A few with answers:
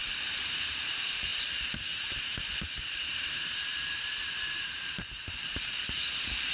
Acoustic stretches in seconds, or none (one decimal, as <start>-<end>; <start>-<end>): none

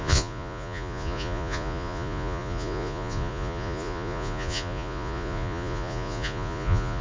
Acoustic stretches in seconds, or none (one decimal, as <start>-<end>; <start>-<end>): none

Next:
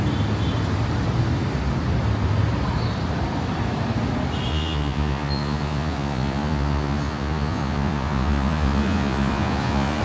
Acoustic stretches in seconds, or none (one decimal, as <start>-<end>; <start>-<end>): 0.0-4.5

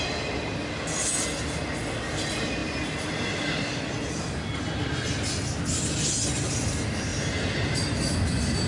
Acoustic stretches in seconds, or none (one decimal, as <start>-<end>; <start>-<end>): 0.0-8.7